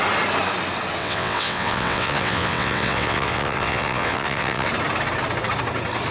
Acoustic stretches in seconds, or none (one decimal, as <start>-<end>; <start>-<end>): 0.0-1.0; 4.7-6.1